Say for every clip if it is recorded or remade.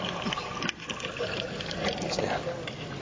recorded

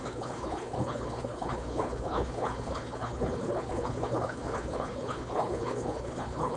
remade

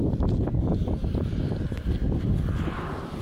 recorded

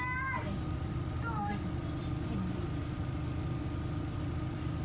recorded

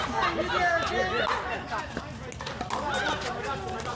recorded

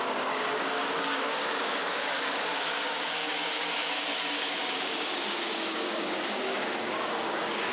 remade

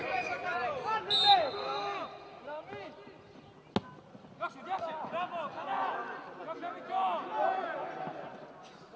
recorded